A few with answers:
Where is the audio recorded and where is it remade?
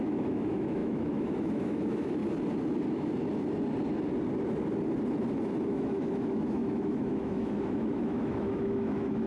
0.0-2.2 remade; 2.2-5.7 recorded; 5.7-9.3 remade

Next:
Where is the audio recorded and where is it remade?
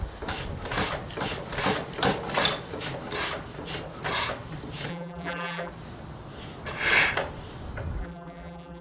0.0-4.9 recorded; 4.9-5.7 remade; 5.7-8.0 recorded; 8.0-8.8 remade